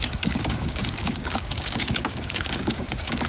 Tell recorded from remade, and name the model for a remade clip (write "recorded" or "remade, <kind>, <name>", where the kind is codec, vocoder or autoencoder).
remade, codec, DAC